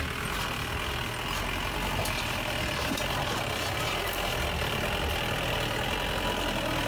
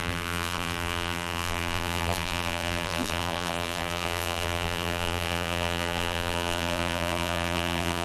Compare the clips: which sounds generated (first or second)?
second